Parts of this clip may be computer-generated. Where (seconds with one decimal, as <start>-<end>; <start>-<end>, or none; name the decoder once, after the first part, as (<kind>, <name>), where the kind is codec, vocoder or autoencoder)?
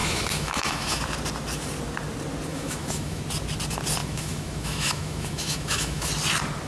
0.0-1.0 (autoencoder, DAC-VAE); 2.5-3.2; 4.0-6.1